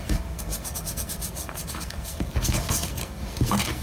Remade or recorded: remade